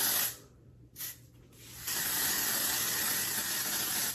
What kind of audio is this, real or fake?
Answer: fake